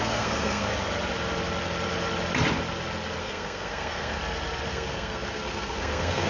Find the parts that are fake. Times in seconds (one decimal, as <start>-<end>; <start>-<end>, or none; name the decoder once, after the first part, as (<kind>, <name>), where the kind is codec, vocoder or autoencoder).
0.0-0.7 (codec, SNAC); 3.2-4.2; 4.7-6.3